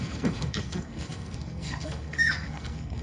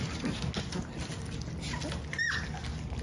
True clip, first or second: second